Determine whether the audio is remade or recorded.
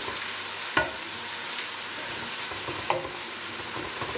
recorded